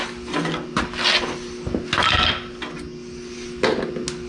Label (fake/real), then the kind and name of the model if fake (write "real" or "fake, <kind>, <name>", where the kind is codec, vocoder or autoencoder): real